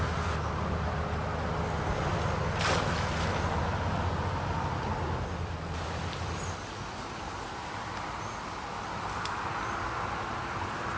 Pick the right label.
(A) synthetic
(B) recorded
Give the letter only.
B